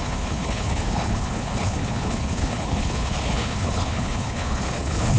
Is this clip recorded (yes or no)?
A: no